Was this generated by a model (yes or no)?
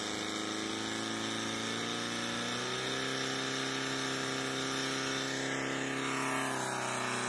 no